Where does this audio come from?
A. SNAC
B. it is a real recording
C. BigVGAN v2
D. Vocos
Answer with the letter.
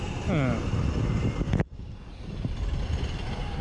B